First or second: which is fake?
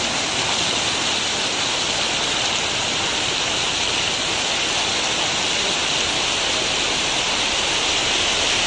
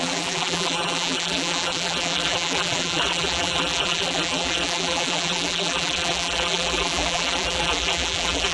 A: second